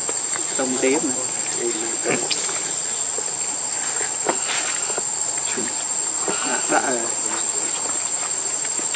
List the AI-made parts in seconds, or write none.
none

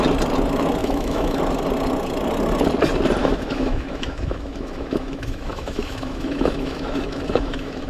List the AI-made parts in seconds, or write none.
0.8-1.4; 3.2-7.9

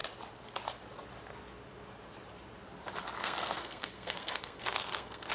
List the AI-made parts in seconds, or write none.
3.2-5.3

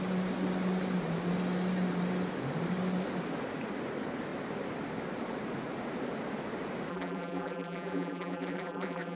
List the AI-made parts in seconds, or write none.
6.9-9.2

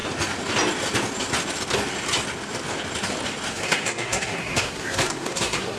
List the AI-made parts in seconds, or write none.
3.5-5.8